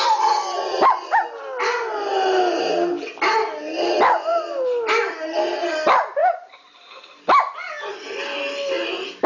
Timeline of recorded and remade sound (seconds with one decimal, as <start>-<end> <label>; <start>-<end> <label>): 0.0-9.3 recorded